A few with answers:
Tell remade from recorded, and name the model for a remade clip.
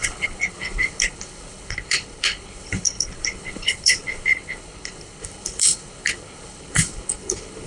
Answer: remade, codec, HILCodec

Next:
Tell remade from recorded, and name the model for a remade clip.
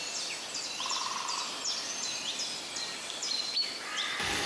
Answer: remade, vocoder, BigVGAN v2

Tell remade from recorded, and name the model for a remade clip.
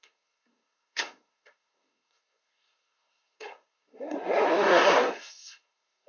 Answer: remade, codec, SNAC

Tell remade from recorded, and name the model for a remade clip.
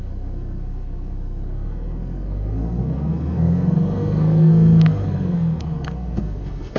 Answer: remade, codec, SNAC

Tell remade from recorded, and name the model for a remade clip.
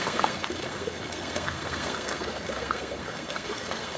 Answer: remade, codec, SNAC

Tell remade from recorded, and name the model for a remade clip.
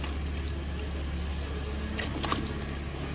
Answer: recorded